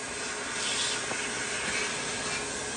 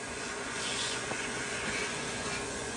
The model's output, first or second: second